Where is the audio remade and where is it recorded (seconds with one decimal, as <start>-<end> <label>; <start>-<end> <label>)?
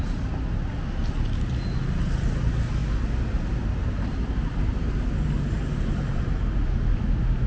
0.0-7.5 recorded